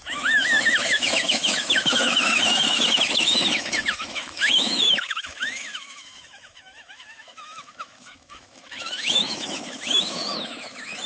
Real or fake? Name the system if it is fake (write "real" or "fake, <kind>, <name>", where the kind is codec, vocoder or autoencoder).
fake, autoencoder, DAC-VAE